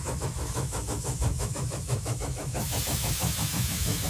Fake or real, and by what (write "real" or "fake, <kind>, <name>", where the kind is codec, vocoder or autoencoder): fake, autoencoder, DAC-VAE